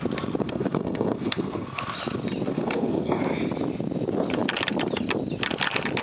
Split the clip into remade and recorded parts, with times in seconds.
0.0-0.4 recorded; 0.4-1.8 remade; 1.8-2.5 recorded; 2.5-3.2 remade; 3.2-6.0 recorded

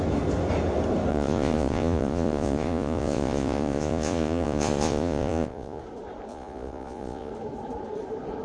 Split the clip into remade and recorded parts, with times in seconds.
0.0-1.1 recorded; 1.1-5.8 remade; 5.8-6.3 recorded; 6.3-7.3 remade; 7.3-8.4 recorded

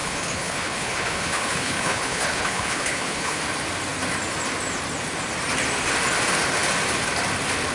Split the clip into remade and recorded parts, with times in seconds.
0.0-3.4 remade; 3.4-7.7 recorded

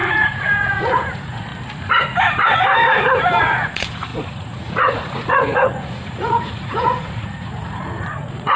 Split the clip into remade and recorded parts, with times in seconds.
0.0-1.5 remade; 1.5-3.3 recorded; 3.3-8.6 remade

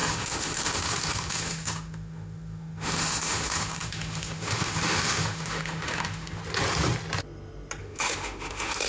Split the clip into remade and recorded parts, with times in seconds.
0.0-6.4 remade; 6.4-7.8 recorded; 7.8-8.9 remade

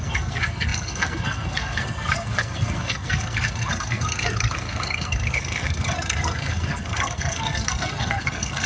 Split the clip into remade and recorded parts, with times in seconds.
0.0-8.7 remade

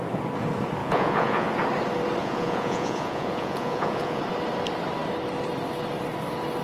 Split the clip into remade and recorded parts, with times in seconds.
0.0-0.8 recorded; 0.8-1.5 remade; 1.5-2.2 recorded; 2.2-4.2 remade; 4.2-6.6 recorded

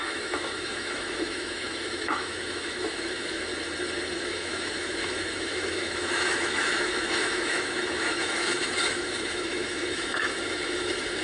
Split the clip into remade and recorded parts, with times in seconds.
0.0-3.5 remade; 3.5-4.1 recorded; 4.1-11.2 remade